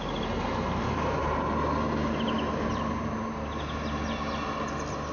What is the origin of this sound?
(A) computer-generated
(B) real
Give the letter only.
B